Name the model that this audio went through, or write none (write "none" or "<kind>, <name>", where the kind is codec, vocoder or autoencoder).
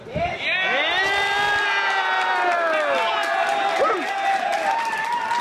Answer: none